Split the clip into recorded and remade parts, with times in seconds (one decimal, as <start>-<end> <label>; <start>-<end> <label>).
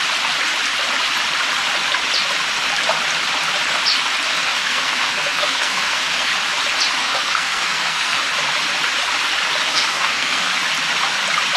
0.0-4.3 recorded; 4.3-6.3 remade; 6.3-7.0 recorded; 7.0-8.2 remade; 8.2-9.7 recorded; 9.7-10.5 remade; 10.5-11.6 recorded